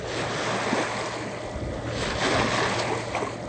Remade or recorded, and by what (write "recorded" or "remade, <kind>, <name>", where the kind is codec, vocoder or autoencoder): recorded